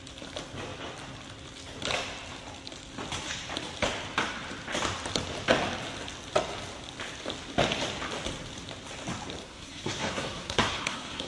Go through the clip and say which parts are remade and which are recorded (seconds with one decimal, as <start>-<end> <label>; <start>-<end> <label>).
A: 0.0-9.4 recorded; 9.4-11.3 remade